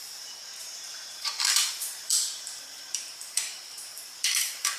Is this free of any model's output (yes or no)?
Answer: no